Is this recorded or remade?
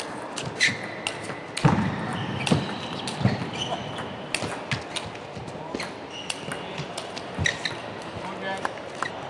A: recorded